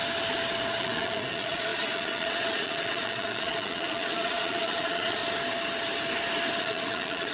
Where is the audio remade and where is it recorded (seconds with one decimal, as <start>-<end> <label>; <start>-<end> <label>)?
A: 0.0-0.8 recorded; 0.8-5.2 remade; 5.2-6.6 recorded; 6.6-7.3 remade